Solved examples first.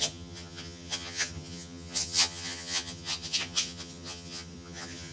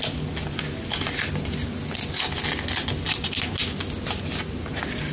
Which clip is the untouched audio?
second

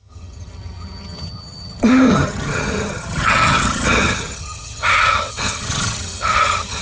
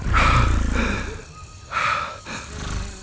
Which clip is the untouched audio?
second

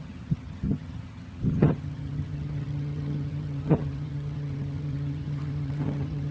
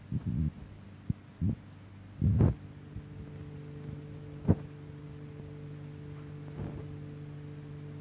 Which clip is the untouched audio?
second